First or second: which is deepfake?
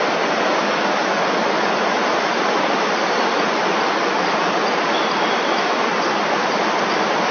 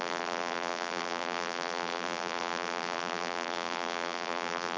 second